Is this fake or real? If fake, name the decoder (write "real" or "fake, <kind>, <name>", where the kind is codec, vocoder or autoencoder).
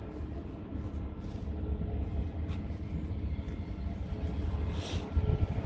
real